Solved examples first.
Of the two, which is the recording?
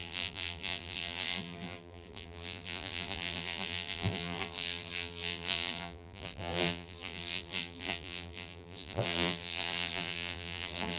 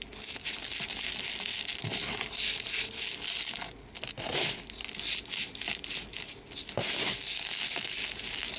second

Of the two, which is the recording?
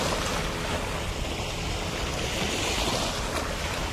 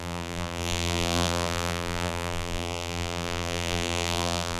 first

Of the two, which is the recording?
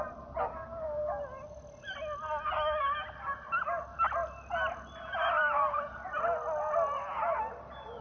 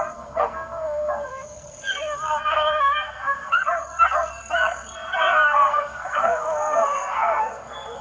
first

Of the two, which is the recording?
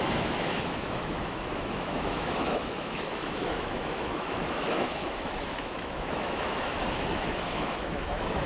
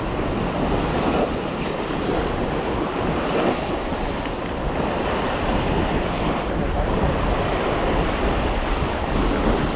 second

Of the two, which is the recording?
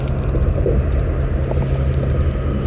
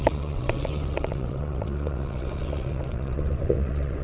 first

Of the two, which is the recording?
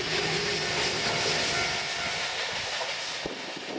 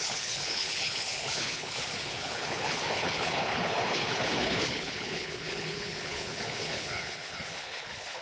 first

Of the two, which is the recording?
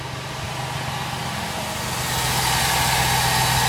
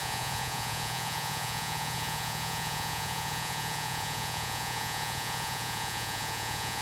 first